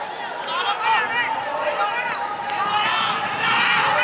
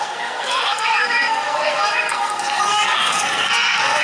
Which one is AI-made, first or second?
second